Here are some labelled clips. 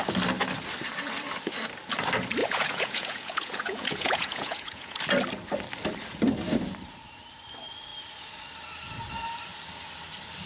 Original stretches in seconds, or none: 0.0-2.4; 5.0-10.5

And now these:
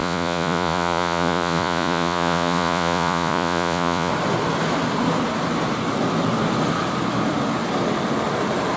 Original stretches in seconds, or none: 4.1-8.8